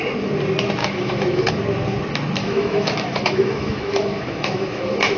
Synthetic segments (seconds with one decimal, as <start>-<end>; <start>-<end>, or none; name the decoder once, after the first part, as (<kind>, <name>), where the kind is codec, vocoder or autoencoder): 0.8-1.5 (autoencoder, DAC-VAE); 2.4-5.2

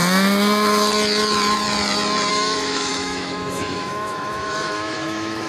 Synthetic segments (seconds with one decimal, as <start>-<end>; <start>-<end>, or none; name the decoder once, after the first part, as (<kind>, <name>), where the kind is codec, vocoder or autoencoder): 2.3-5.5 (autoencoder, DAC-VAE)

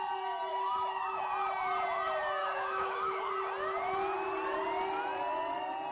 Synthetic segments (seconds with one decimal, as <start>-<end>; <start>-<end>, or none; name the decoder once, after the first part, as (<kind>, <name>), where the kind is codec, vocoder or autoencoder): 0.5-1.2 (autoencoder, DAC-VAE); 2.4-3.3